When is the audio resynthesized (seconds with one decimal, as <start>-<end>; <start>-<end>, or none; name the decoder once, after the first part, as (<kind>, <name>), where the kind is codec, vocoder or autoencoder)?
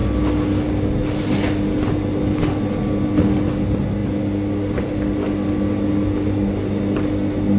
none